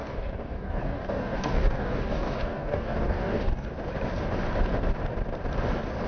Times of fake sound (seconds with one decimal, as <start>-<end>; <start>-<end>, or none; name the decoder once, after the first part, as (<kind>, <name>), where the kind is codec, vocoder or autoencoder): 0.0-3.7 (codec, DAC)